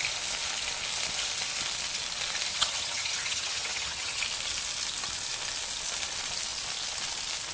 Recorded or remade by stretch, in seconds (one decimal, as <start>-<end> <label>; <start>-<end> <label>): 0.0-2.5 recorded; 2.5-4.2 remade; 4.2-7.5 recorded

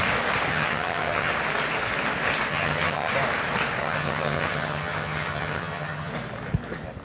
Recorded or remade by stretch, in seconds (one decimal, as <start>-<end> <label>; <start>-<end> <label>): 0.0-0.5 recorded; 0.5-1.3 remade; 1.3-2.5 recorded; 2.5-3.1 remade; 3.1-3.8 recorded; 3.8-6.1 remade; 6.1-7.0 recorded

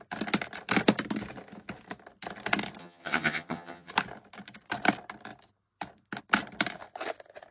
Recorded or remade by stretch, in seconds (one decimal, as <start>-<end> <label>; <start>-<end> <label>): 0.0-2.8 recorded; 2.8-3.9 remade; 3.9-7.5 recorded

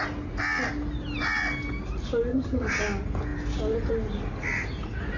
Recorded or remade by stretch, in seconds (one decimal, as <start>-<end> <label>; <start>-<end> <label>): 0.0-2.3 recorded; 2.3-2.8 remade; 2.8-5.2 recorded

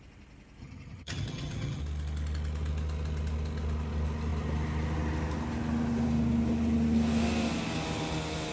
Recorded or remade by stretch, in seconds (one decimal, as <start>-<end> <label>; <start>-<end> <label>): 0.0-0.6 recorded; 0.6-1.8 remade; 1.8-8.5 recorded

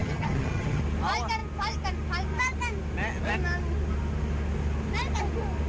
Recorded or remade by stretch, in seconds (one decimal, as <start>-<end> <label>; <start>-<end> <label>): 0.0-0.8 remade; 0.8-5.7 recorded